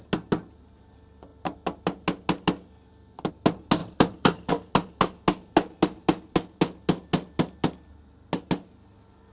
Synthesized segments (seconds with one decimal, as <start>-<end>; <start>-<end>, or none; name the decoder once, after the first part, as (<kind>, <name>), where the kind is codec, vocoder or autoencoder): 3.8-4.5 (vocoder, BigVGAN v2)